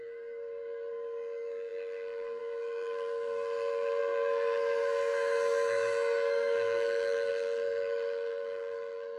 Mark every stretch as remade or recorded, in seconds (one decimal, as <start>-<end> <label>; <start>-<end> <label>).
0.0-9.2 remade